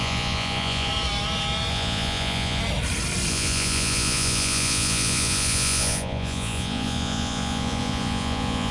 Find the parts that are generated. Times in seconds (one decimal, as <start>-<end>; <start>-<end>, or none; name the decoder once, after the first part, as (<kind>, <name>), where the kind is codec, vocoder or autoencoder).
0.0-0.9 (vocoder, Vocos); 1.7-2.6; 3.3-8.7